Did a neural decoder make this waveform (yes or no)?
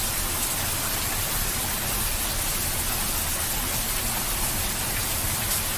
no